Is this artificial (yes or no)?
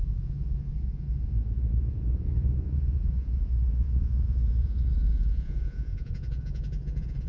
yes